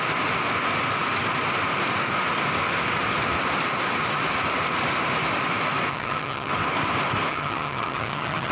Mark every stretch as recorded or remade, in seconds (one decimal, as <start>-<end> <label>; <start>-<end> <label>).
0.0-5.9 recorded; 5.9-6.5 remade; 6.5-7.3 recorded; 7.3-8.5 remade